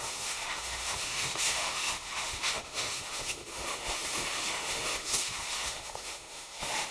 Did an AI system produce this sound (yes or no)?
yes